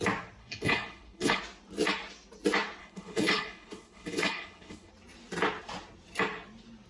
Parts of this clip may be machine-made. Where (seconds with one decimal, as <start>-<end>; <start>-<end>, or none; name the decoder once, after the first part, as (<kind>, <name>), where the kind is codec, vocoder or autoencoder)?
0.4-1.4 (codec, HILCodec); 2.8-4.9